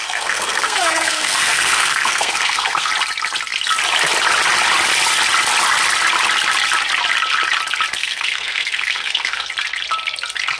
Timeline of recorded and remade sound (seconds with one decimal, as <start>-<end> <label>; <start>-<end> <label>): 0.0-2.9 remade; 2.9-8.0 recorded; 8.0-9.5 remade; 9.5-10.6 recorded